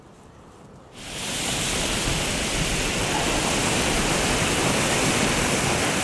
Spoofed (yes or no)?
yes